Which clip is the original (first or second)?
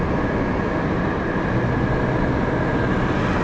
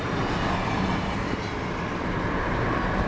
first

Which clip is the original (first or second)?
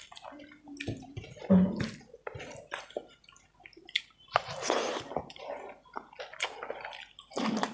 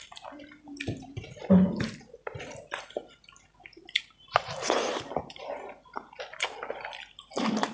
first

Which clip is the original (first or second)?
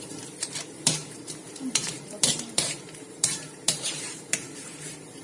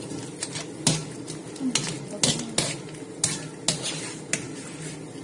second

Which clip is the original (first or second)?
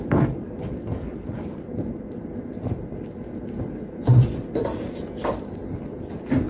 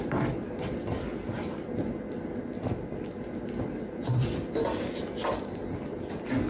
second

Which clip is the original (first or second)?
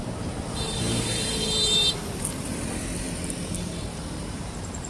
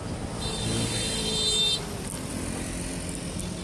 second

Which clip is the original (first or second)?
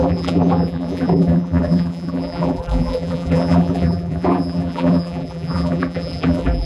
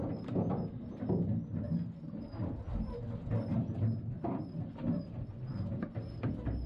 second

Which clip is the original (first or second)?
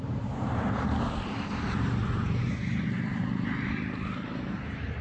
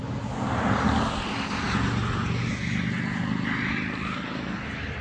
second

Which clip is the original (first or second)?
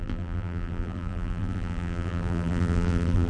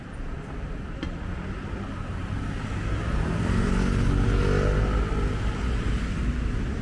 second